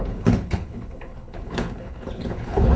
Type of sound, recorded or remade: remade